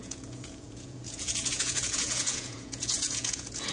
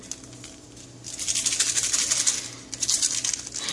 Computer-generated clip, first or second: first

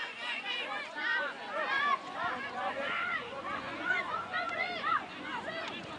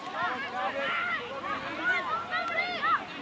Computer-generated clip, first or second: first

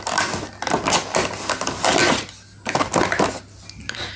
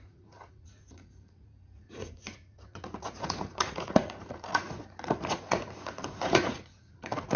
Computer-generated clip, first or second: second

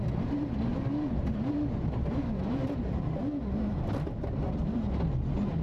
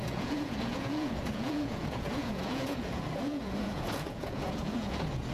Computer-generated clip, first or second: second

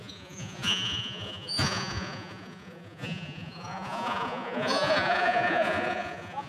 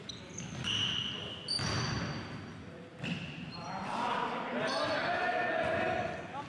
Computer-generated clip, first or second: first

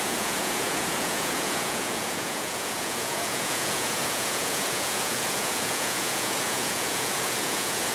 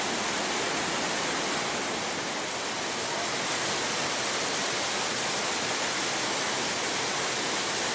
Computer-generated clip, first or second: first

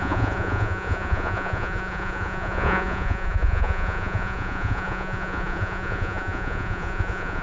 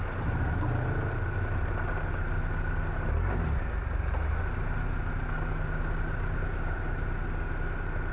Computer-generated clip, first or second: first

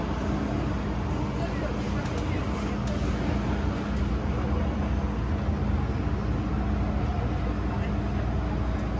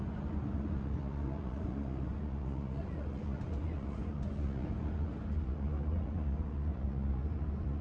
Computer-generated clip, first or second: second